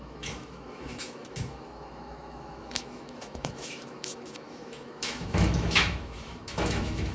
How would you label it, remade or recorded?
remade